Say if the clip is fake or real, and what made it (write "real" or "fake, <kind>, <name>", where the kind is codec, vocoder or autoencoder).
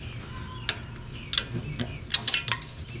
real